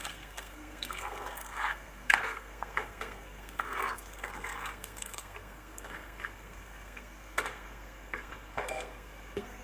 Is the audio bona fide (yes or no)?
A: no